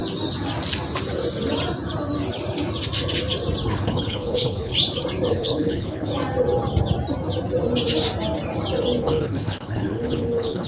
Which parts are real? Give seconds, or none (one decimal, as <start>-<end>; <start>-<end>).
0.0-3.7; 4.7-5.3; 6.1-9.0